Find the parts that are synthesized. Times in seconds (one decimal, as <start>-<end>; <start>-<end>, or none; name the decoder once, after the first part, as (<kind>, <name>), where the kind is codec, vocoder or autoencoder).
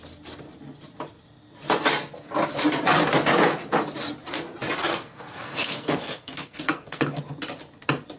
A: 4.8-7.2 (codec, SNAC)